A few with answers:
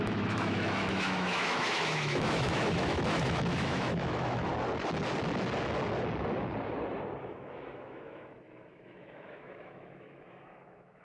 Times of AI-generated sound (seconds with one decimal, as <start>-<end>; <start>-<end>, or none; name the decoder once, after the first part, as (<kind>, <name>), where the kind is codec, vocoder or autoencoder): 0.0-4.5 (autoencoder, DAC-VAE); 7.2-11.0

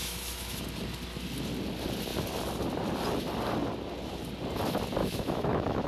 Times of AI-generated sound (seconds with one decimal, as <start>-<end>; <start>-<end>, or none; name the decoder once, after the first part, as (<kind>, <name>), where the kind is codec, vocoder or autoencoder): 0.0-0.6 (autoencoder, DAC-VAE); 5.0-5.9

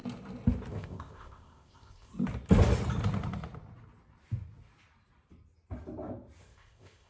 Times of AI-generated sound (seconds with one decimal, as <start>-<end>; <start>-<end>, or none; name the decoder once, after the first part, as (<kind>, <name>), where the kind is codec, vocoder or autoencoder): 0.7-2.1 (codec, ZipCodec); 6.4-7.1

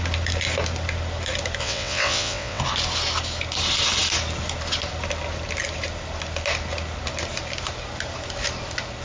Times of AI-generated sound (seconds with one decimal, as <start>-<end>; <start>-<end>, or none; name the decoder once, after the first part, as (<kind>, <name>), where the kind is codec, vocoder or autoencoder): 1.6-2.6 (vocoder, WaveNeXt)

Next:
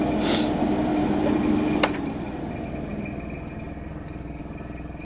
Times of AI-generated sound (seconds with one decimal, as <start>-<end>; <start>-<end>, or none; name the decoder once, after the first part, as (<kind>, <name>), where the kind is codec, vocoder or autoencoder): none